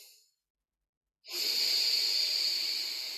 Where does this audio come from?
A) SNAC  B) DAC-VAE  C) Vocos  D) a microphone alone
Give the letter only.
D